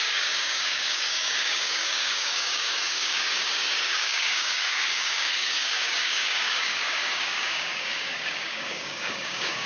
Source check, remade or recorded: remade